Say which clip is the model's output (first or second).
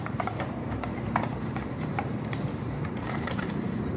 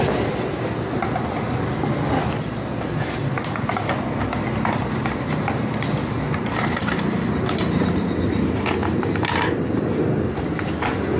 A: first